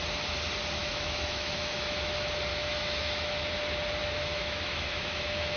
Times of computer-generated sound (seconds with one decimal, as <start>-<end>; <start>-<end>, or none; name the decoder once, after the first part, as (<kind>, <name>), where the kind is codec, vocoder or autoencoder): 0.8-2.1 (autoencoder, DAC-VAE); 2.5-3.5; 4.0-5.6